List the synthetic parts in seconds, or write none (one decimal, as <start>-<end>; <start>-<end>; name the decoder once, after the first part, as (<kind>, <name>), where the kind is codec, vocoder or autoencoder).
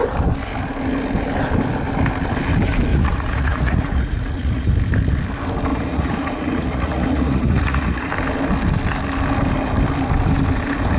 2.9-4.7 (vocoder, Vocos); 5.7-8.1